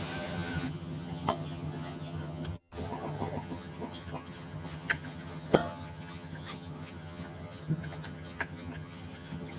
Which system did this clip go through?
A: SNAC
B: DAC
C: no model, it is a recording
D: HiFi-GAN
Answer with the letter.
D